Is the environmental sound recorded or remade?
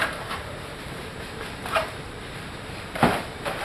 remade